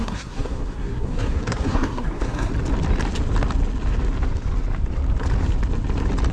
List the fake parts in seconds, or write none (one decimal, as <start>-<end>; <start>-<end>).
0.0-2.5